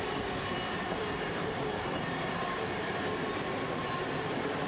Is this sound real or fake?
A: fake